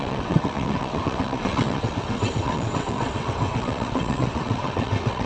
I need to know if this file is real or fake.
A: fake